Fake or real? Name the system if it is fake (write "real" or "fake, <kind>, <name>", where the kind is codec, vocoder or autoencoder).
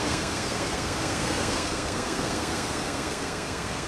fake, codec, SNAC